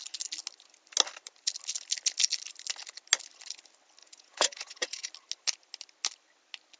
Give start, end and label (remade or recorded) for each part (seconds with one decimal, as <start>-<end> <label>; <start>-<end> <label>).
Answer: 0.0-4.0 recorded; 4.0-5.1 remade; 5.1-6.8 recorded

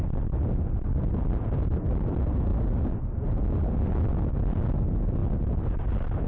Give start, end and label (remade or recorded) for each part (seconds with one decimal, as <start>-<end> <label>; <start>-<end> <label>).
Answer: 0.0-6.3 recorded

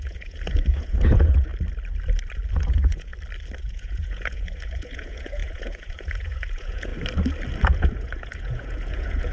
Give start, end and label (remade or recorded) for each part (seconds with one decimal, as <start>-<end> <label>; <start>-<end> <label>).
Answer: 0.0-1.5 remade; 1.5-2.5 recorded; 2.5-3.1 remade; 3.1-3.6 recorded; 3.6-6.9 remade; 6.9-7.6 recorded; 7.6-9.3 remade

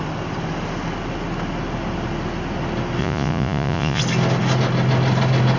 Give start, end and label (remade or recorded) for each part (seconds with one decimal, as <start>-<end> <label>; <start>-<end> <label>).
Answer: 0.0-3.0 recorded; 3.0-4.0 remade; 4.0-5.6 recorded

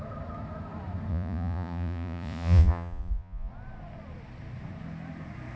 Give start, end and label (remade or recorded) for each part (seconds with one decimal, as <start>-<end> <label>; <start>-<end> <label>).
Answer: 0.0-1.1 recorded; 1.1-3.5 remade; 3.5-5.6 recorded

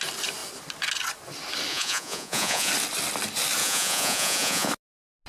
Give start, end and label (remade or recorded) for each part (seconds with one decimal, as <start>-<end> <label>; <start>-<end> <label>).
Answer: 0.0-1.7 recorded; 1.7-2.7 remade; 2.7-3.6 recorded; 3.6-4.7 remade; 4.7-5.3 recorded

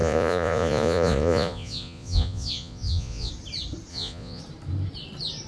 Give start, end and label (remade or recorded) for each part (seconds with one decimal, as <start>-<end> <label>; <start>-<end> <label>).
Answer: 0.0-3.3 remade; 3.3-3.9 recorded; 3.9-4.4 remade; 4.4-5.5 recorded